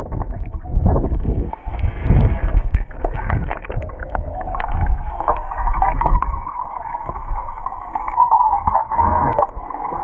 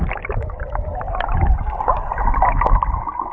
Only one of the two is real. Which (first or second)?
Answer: second